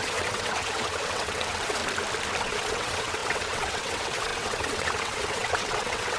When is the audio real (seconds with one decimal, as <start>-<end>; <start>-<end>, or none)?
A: 1.8-2.4